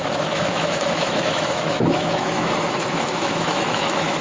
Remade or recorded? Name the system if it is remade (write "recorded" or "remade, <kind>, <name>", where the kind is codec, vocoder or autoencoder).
remade, autoencoder, DAC-VAE